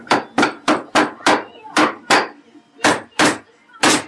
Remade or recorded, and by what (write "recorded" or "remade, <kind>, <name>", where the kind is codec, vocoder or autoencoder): recorded